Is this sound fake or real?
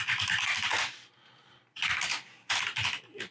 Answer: real